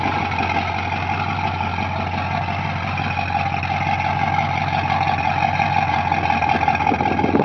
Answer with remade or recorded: recorded